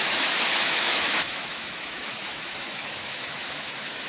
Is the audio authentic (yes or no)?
no